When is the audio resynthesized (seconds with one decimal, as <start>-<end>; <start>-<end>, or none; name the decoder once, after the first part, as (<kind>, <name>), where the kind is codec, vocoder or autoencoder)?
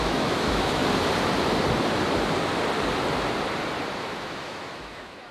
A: 0.0-0.8 (autoencoder, DAC-VAE); 4.0-5.3